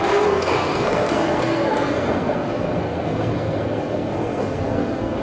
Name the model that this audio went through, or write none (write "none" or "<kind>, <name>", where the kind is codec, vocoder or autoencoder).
codec, SNAC